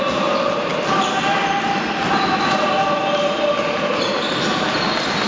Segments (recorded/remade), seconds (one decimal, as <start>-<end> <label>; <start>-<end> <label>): 0.0-5.3 recorded

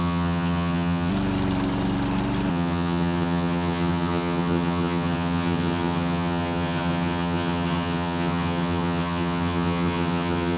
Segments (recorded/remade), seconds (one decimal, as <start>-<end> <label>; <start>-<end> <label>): 0.0-1.1 remade; 1.1-2.5 recorded; 2.5-10.6 remade

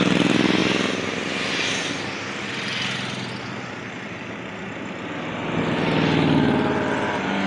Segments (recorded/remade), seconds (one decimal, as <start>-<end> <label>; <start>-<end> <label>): 0.0-7.5 recorded